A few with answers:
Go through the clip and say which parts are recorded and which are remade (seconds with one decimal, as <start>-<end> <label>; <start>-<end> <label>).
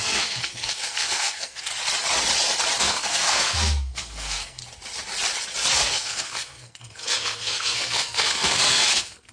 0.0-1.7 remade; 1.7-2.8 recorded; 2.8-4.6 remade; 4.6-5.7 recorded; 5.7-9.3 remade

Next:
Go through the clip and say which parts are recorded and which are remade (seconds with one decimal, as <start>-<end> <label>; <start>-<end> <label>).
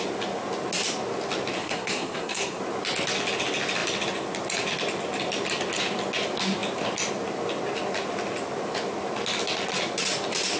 0.0-1.6 recorded; 1.6-2.6 remade; 2.6-10.6 recorded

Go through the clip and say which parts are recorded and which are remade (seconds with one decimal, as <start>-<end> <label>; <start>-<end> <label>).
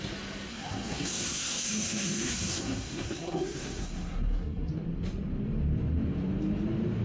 0.0-0.5 recorded; 0.5-4.7 remade; 4.7-7.0 recorded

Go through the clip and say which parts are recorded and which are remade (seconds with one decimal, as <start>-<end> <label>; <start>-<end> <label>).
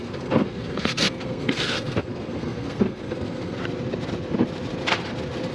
0.0-3.6 remade; 3.6-5.5 recorded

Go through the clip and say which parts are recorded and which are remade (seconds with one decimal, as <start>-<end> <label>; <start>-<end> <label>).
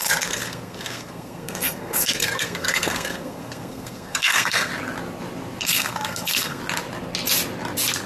0.0-4.7 remade; 4.7-5.6 recorded; 5.6-6.6 remade; 6.6-8.1 recorded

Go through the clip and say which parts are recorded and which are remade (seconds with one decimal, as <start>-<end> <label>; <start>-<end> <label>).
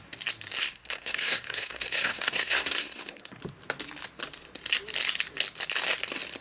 0.0-0.6 recorded; 0.6-3.4 remade; 3.4-6.4 recorded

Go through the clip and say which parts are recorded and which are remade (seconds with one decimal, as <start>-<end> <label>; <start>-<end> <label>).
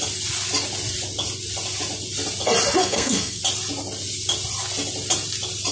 0.0-2.8 recorded; 2.8-3.4 remade; 3.4-5.7 recorded